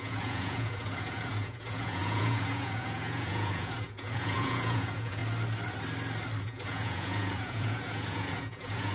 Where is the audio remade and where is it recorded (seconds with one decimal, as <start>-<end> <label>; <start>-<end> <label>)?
0.0-5.2 remade; 5.2-6.4 recorded; 6.4-8.9 remade